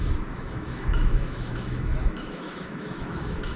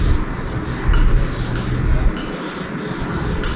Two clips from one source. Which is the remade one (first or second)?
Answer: first